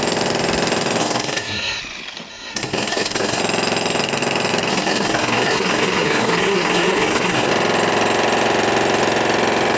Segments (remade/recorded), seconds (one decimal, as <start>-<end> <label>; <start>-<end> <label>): 0.0-1.0 recorded; 1.0-1.8 remade; 1.8-2.3 recorded; 2.3-3.4 remade; 3.4-4.7 recorded; 4.7-7.5 remade; 7.5-9.8 recorded